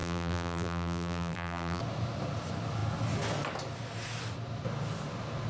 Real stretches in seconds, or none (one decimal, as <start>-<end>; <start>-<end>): 1.8-5.5